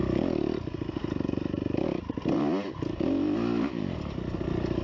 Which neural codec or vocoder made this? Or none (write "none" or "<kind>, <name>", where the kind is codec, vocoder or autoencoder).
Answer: none